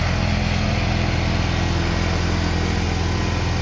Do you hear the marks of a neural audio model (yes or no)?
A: no